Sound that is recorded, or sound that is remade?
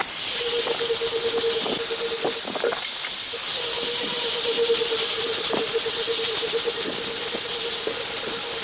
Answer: recorded